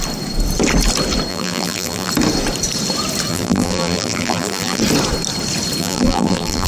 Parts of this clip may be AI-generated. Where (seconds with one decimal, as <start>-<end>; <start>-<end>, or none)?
1.3-2.1; 3.3-4.8; 5.8-6.7